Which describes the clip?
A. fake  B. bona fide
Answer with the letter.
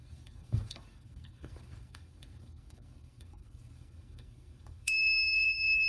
A